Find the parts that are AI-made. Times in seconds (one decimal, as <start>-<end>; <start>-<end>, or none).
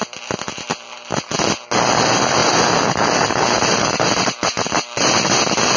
none